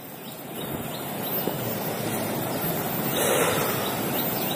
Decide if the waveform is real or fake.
real